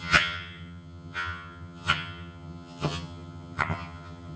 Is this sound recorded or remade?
remade